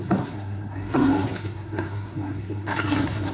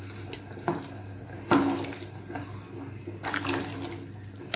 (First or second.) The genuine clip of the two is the second